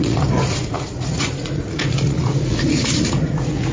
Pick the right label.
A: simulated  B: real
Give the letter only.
A